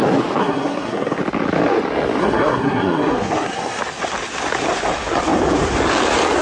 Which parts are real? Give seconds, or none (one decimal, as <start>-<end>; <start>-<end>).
0.0-0.4; 1.2-2.2; 3.8-6.4